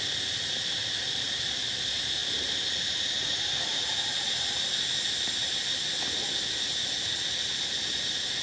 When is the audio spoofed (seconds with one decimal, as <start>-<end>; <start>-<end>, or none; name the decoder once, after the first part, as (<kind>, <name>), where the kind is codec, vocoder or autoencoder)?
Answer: none